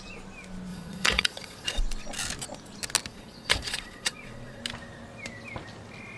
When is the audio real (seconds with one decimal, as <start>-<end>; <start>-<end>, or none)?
0.0-0.7; 1.8-3.1; 4.6-6.2